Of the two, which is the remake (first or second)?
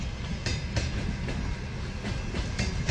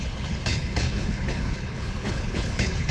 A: second